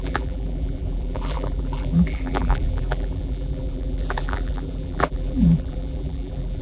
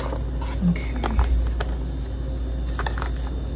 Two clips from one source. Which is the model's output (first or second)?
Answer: first